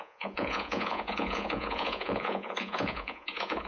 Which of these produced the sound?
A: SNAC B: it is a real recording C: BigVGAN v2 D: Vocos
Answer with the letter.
D